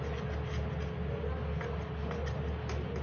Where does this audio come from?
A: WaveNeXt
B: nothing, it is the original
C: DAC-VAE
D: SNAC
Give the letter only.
B